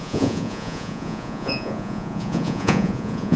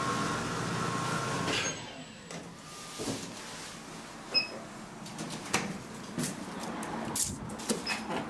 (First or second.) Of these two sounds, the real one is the second